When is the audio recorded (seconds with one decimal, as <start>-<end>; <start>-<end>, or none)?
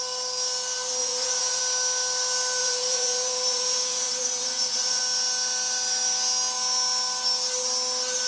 0.0-1.0; 1.6-2.6; 5.0-8.3